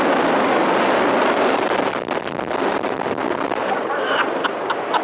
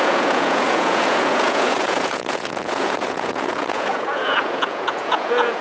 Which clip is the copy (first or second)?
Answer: second